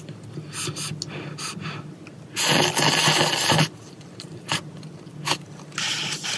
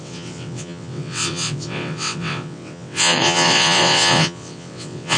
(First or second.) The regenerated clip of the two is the second